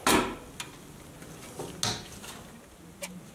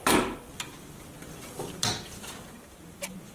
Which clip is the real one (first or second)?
first